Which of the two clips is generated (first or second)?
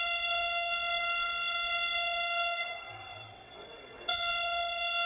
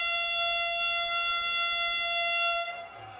first